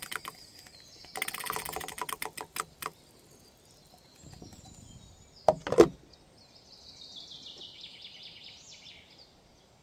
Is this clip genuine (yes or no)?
yes